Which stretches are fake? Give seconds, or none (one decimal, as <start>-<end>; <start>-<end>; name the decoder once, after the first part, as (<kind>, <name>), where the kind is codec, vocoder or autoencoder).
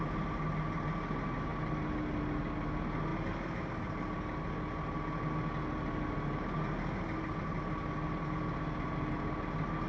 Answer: none